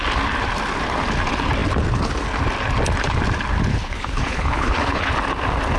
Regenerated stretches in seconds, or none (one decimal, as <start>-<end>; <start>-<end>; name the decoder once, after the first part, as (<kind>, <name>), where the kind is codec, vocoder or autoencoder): 3.7-5.1 (codec, HILCodec)